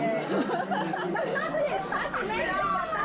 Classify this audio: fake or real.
fake